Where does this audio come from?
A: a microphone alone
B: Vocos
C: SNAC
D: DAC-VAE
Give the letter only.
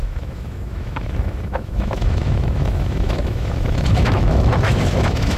D